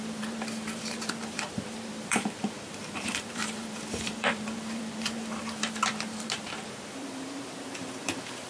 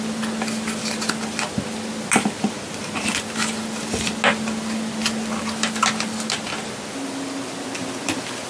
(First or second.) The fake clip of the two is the first